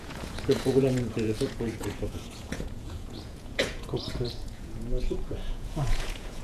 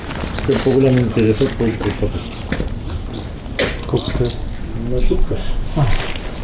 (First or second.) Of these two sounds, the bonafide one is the second